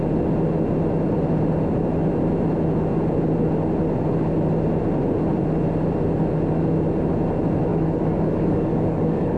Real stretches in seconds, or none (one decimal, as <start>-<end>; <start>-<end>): 0.0-7.7